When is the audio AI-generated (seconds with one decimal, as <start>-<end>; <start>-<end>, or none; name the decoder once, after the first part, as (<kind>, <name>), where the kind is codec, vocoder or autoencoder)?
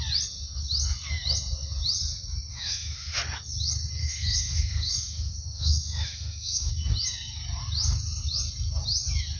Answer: 2.5-3.2 (autoencoder, DAC-VAE); 4.0-6.7